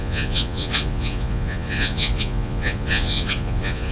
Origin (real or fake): fake